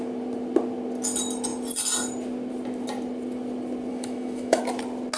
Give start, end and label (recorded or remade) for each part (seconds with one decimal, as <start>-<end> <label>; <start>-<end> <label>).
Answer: 0.0-3.9 recorded; 3.9-4.6 remade; 4.6-5.2 recorded